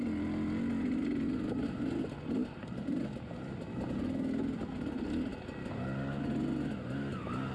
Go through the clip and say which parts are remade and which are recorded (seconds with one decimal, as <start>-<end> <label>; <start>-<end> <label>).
0.0-7.5 recorded